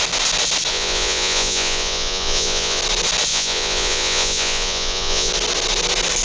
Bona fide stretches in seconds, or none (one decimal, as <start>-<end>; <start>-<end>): 0.0-0.7; 2.8-3.3; 5.3-6.2